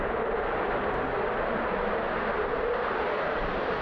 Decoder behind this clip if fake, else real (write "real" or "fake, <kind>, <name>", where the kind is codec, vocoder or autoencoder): real